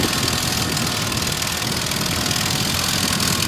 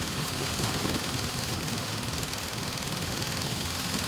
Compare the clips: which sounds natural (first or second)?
first